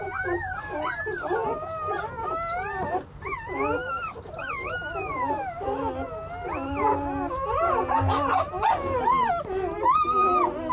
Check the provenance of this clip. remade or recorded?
recorded